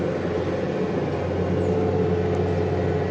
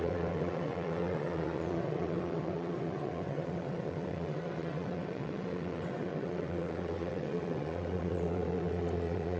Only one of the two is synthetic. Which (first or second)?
second